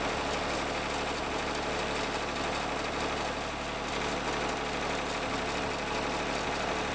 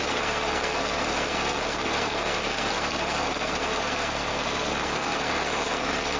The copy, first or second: second